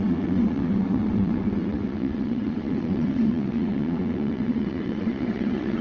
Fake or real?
fake